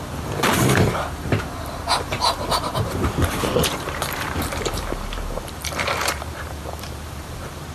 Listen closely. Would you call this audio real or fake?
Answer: fake